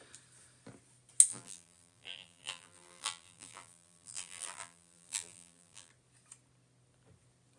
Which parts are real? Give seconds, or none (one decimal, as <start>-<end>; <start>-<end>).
0.0-1.3; 5.9-7.6